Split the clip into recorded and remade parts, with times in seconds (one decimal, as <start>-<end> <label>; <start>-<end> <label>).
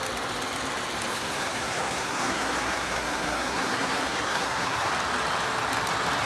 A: 0.0-1.1 recorded; 1.1-4.9 remade; 4.9-6.3 recorded